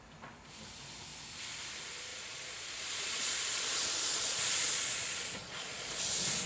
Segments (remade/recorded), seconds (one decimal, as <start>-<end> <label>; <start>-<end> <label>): 0.0-2.1 recorded; 2.1-6.0 remade; 6.0-6.5 recorded